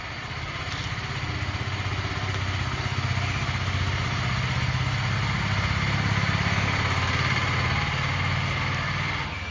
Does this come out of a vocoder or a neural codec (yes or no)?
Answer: no